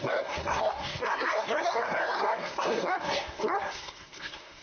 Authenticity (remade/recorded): remade